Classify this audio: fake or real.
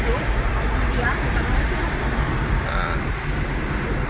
real